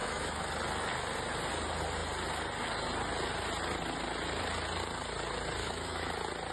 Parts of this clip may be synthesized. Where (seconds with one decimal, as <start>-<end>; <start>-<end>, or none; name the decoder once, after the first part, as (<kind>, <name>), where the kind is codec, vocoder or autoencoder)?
0.0-0.5 (autoencoder, DAC-VAE); 5.6-6.1